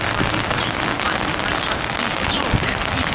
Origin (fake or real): real